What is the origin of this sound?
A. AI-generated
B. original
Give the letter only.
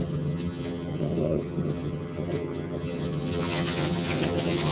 A